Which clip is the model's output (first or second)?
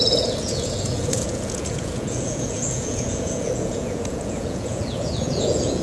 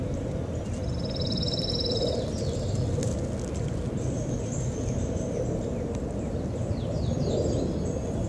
first